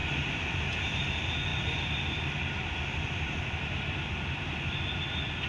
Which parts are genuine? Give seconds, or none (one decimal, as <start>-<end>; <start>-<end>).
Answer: 1.0-1.5; 4.8-5.5